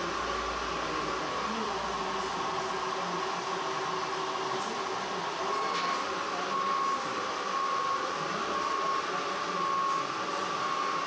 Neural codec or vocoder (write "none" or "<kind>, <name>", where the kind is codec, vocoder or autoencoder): none